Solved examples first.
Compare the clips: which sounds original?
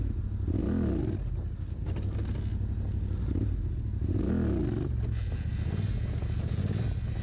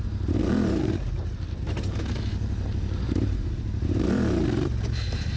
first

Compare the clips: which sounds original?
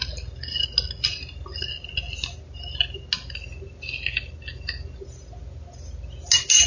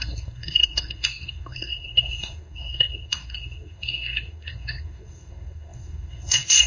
first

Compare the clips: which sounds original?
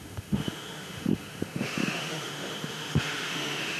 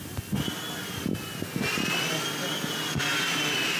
second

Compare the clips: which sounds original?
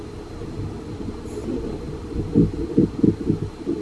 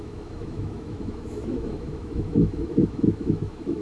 first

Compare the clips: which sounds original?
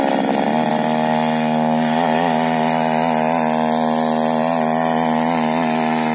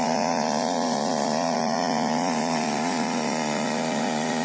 first